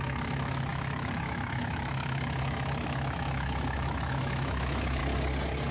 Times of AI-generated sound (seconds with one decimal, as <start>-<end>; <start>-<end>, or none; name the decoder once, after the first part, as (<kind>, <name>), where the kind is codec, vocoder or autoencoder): 0.0-5.0 (autoencoder, DAC-VAE)